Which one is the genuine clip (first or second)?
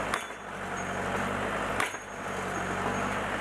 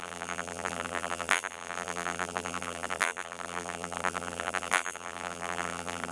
first